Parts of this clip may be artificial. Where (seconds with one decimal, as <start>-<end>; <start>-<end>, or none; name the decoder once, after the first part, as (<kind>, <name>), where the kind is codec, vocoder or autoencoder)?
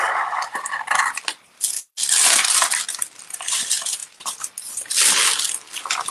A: none